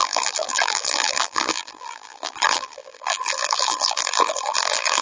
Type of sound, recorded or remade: remade